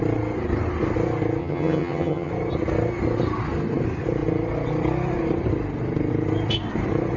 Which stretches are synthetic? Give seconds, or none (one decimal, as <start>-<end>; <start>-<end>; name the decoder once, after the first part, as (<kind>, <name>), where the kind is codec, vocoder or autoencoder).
1.4-2.3 (vocoder, HiFi-GAN)